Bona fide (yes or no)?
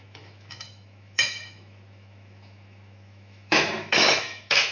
no